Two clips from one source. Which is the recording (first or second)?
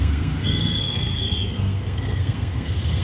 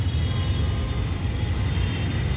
second